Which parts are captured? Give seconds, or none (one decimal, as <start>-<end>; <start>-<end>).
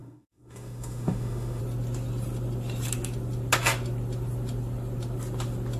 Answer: 1.6-5.8